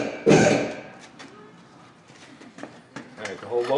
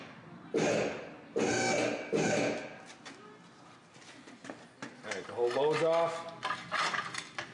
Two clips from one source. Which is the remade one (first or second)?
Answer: first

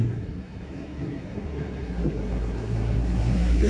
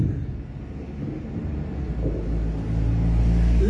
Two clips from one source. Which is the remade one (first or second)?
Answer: first